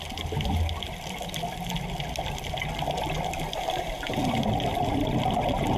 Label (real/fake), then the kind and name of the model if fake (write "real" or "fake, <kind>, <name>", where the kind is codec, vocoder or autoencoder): real